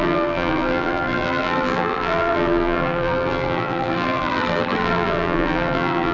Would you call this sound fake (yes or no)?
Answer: yes